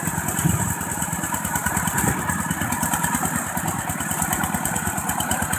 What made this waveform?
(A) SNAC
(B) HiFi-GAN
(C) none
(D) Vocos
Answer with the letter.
C